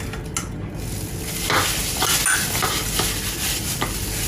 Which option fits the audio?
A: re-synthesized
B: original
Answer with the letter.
B